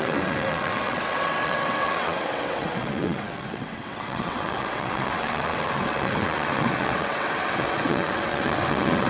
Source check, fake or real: fake